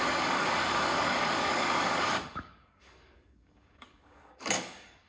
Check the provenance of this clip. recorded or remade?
remade